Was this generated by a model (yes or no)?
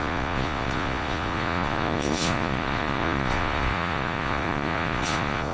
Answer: yes